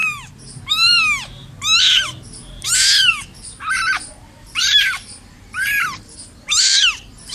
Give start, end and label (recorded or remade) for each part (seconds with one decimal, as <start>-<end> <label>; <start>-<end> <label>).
0.0-0.6 remade; 0.6-3.0 recorded; 3.0-6.2 remade; 6.2-7.3 recorded